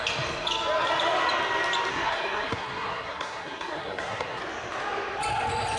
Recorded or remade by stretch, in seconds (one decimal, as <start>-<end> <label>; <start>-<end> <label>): 0.0-1.9 recorded; 1.9-4.4 remade; 4.4-5.8 recorded